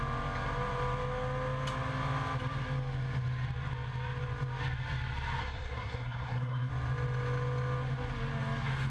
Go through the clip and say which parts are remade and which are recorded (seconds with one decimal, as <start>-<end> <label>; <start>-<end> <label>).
0.0-5.4 recorded; 5.4-6.7 remade; 6.7-8.9 recorded

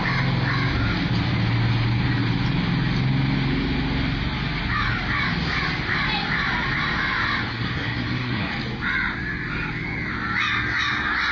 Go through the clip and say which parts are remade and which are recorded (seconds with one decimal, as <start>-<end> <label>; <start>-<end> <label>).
0.0-7.5 recorded; 7.5-8.5 remade; 8.5-11.3 recorded

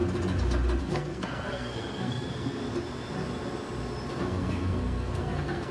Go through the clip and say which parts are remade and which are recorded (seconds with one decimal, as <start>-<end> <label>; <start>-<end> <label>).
0.0-0.8 recorded; 0.8-2.6 remade; 2.6-4.2 recorded; 4.2-5.7 remade